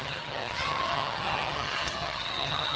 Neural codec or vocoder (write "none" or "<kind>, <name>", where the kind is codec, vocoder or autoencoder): vocoder, HiFi-GAN